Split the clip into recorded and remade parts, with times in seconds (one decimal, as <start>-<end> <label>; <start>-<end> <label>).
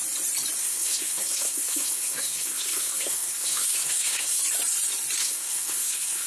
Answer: 0.0-0.6 recorded; 0.6-4.4 remade; 4.4-5.2 recorded; 5.2-6.3 remade